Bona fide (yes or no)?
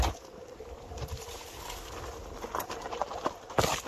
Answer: no